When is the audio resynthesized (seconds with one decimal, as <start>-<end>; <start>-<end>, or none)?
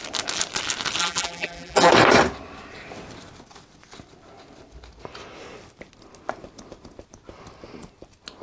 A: 1.0-1.9